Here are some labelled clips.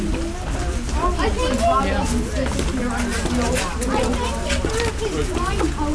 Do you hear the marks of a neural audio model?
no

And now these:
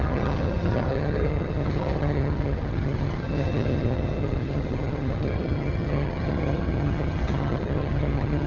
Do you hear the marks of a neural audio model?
yes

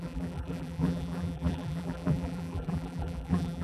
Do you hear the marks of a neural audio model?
yes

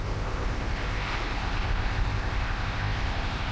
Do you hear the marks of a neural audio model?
yes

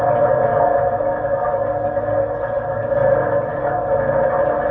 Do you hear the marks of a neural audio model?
no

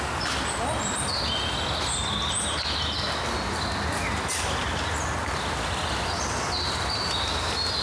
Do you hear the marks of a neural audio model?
no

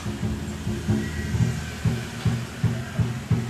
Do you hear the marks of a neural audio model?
no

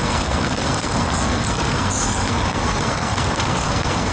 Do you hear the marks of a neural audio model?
yes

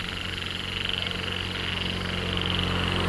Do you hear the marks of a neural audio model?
no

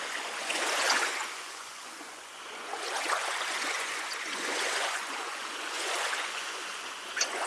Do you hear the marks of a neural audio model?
yes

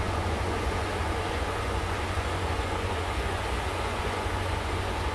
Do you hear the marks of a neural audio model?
yes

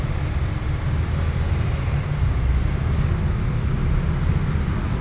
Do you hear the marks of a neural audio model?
no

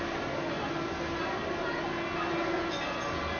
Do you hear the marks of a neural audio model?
no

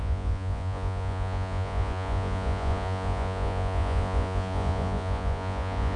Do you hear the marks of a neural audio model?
yes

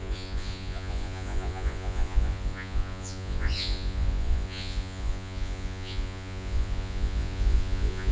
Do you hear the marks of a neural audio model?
yes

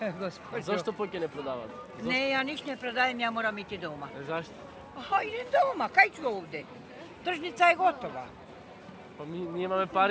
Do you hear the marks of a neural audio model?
no